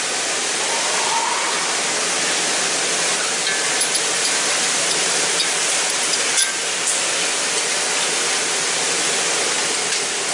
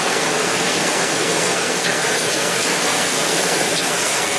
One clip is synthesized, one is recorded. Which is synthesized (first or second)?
second